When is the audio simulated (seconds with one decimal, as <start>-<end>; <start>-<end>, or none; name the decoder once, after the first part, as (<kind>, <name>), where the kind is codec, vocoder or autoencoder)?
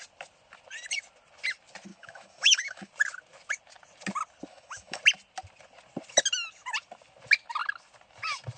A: 1.9-2.9 (autoencoder, DAC-VAE); 4.5-5.0